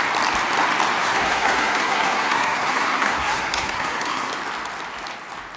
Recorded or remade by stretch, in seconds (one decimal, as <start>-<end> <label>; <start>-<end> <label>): 0.0-1.0 recorded; 1.0-4.3 remade; 4.3-5.6 recorded